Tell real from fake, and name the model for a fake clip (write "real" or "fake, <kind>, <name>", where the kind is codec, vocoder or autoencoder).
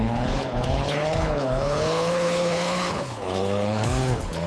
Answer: fake, codec, HILCodec